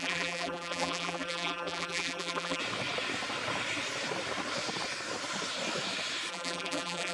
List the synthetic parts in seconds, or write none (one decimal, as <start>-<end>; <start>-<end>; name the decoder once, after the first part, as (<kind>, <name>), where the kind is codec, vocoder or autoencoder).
0.0-2.6 (vocoder, BigVGAN v2); 6.3-7.1